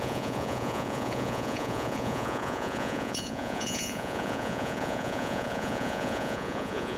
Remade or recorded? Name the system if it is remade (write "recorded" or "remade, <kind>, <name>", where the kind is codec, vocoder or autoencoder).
remade, vocoder, Vocos